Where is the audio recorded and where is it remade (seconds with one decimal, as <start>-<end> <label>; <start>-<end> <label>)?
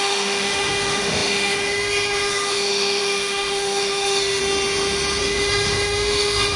0.0-4.4 remade; 4.4-5.2 recorded; 5.2-6.6 remade